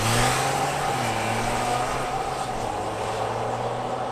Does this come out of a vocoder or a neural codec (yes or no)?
no